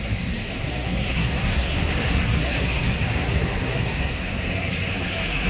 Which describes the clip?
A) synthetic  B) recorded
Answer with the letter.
A